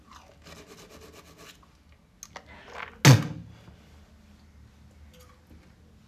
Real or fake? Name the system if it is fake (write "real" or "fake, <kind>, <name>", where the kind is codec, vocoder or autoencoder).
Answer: real